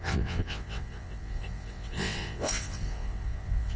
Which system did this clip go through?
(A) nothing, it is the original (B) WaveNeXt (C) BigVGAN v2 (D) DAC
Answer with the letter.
B